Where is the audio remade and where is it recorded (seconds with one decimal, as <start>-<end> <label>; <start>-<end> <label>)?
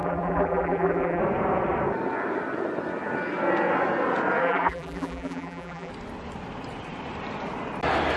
0.0-1.2 remade; 1.2-4.4 recorded; 4.4-5.9 remade; 5.9-8.2 recorded